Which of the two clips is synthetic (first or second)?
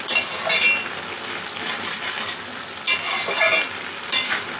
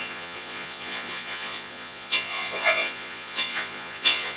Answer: second